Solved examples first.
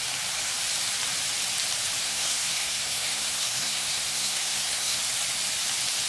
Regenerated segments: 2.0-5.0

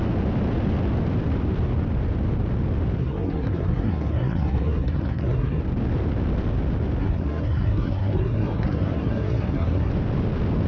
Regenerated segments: 3.0-5.6; 7.0-9.9

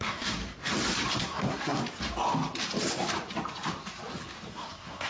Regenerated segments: 0.0-0.4; 1.2-1.8; 4.5-5.1

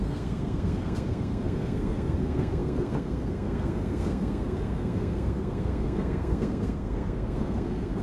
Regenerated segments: 0.0-8.0